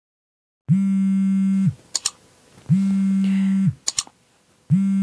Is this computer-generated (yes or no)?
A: no